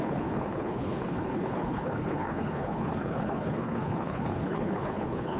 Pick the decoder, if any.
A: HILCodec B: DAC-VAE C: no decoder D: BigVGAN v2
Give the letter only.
A